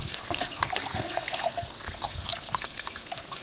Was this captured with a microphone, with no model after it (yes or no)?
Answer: no